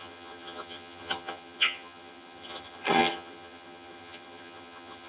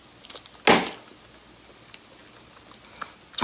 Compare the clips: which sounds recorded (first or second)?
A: second